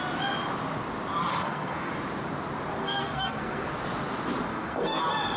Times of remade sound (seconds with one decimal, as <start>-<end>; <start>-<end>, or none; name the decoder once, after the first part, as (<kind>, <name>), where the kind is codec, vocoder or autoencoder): 1.3-1.9 (codec, SNAC); 2.8-3.7; 4.5-5.0